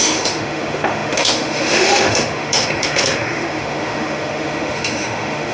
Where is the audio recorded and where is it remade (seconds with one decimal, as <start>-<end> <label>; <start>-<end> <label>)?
0.0-5.5 remade